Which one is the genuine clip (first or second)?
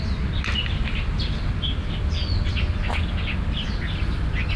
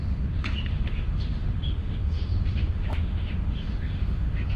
first